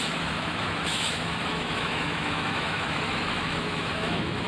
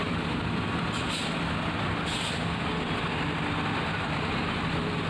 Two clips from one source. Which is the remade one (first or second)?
first